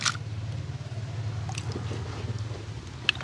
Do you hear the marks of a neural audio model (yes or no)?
no